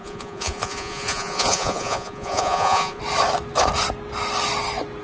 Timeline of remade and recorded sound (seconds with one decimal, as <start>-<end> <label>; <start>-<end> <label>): 0.0-3.0 remade; 3.0-5.0 recorded